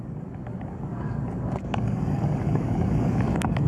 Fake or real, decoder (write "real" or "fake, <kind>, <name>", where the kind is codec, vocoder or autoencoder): fake, codec, DAC